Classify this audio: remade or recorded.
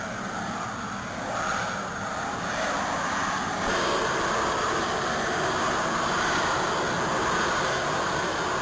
recorded